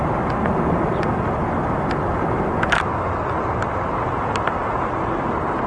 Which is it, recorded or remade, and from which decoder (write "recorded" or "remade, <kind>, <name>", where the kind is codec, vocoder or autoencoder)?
recorded